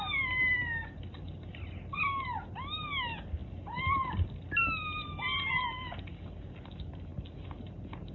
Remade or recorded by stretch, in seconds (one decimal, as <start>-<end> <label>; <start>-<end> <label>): 0.0-8.1 recorded